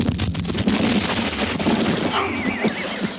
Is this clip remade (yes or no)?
no